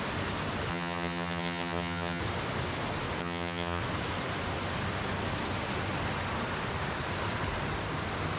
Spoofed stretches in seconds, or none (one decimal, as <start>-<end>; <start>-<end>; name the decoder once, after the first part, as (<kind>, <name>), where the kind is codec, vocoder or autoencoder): 0.7-2.2 (vocoder, HiFi-GAN); 3.2-3.8